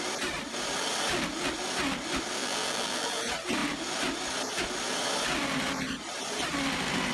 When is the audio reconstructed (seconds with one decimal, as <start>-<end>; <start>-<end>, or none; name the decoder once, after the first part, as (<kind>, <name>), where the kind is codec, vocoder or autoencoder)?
2.4-3.2 (vocoder, BigVGAN v2)